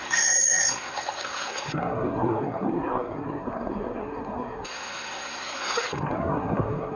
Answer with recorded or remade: remade